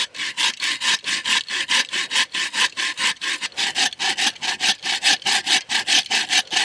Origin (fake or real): real